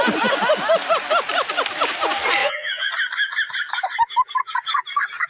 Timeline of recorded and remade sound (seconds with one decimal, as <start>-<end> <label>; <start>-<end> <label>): 0.0-2.4 recorded; 2.4-2.9 remade; 2.9-5.3 recorded